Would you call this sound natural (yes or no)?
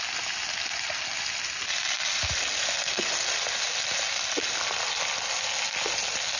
yes